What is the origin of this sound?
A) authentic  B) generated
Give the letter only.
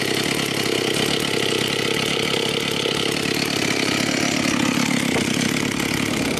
A